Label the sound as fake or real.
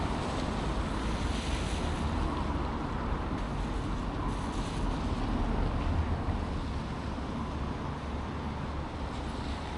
real